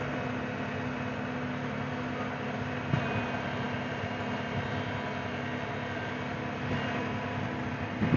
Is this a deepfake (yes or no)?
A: no